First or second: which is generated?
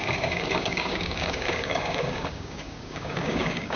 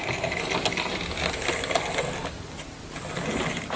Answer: first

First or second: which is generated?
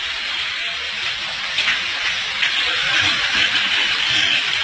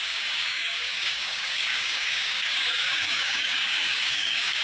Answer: second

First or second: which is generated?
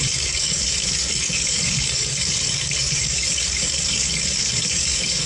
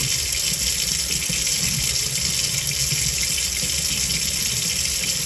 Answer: first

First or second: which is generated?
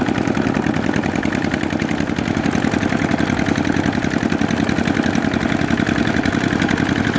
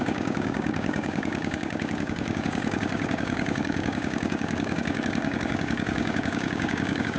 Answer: second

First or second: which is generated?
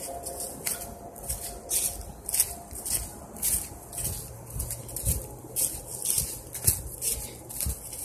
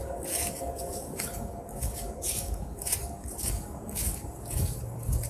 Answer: second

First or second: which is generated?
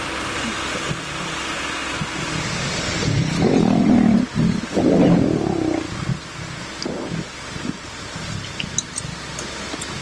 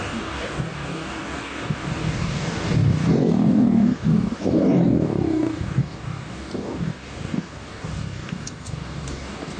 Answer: second